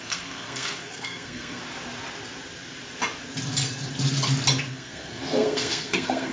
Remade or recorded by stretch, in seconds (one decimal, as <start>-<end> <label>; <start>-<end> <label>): 0.0-1.6 remade; 1.6-4.7 recorded; 4.7-6.3 remade